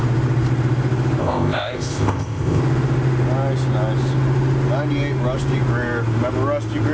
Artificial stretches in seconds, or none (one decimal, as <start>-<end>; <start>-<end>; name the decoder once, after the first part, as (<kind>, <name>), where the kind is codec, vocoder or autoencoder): 1.2-2.6 (codec, ZipCodec)

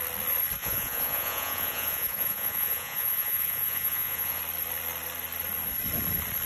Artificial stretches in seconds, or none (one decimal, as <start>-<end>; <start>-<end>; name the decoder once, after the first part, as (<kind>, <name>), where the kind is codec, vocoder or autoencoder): 0.6-4.4 (vocoder, Vocos)

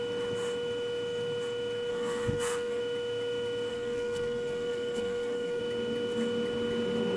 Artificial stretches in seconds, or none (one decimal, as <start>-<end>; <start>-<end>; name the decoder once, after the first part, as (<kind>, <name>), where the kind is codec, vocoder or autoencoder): 1.9-2.8 (codec, SNAC); 3.7-5.6

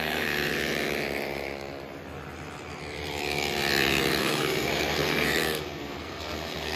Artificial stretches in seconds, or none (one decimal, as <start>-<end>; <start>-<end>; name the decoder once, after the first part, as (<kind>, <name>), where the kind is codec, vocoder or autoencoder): 0.0-0.5 (codec, SNAC); 4.2-6.8